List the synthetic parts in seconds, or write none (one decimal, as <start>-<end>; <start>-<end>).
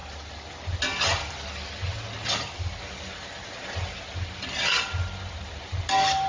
none